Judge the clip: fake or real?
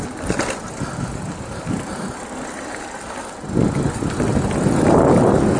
real